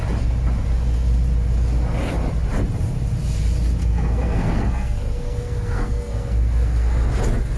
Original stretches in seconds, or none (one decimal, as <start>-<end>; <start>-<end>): 0.0-3.8; 7.1-7.6